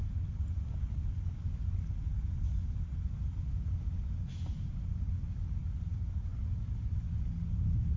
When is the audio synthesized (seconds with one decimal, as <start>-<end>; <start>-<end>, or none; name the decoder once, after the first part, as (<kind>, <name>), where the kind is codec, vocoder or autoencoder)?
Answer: none